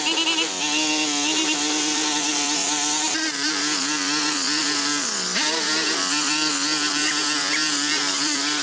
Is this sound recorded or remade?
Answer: remade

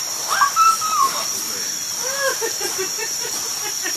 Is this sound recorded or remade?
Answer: remade